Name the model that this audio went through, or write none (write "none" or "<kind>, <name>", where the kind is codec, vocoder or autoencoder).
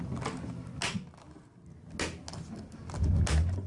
none